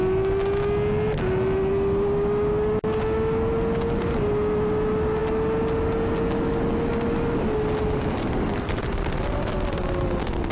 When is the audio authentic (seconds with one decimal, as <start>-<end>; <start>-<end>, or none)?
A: 0.0-10.5